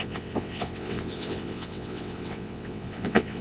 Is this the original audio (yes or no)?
no